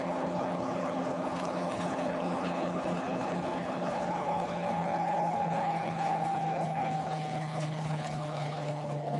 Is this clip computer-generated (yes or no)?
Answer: yes